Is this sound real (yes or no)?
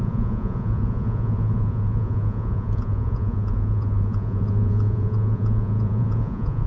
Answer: no